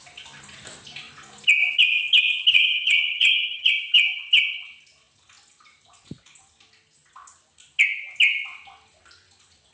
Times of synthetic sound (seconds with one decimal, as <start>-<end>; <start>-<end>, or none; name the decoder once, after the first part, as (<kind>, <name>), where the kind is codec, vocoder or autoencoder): 2.5-3.7 (vocoder, HiFi-GAN)